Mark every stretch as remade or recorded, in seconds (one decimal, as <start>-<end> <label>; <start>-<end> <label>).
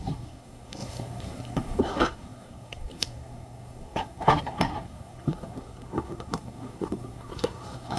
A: 0.0-8.0 remade